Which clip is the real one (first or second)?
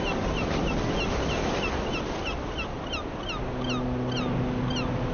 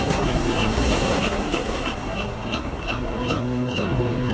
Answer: first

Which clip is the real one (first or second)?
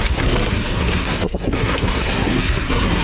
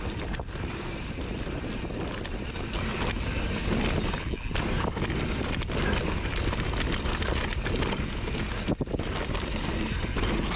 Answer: second